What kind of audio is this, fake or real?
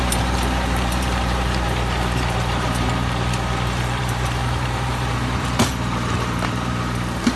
fake